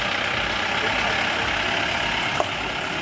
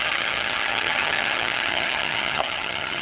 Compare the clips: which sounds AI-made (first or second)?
second